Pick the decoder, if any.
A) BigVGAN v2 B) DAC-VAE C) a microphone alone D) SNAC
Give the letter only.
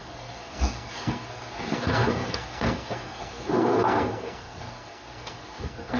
D